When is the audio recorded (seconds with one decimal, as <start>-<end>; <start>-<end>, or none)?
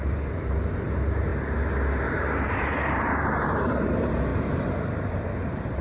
1.3-2.5